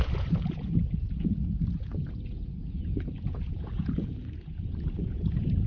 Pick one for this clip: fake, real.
fake